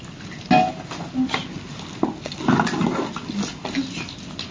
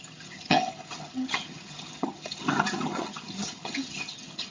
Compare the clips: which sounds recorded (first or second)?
first